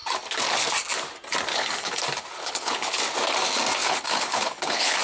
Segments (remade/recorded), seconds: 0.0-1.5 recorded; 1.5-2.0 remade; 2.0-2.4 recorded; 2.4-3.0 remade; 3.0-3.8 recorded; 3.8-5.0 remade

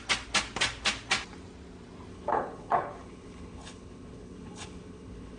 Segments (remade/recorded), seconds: 0.0-2.1 recorded; 2.1-5.4 remade

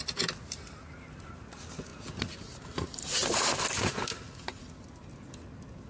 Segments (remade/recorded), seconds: 0.0-5.9 recorded